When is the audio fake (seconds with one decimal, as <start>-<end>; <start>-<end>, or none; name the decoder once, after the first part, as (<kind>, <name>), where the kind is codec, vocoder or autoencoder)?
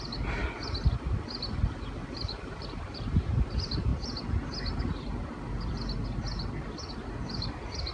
0.0-0.4 (vocoder, BigVGAN v2); 1.1-3.9; 6.9-7.9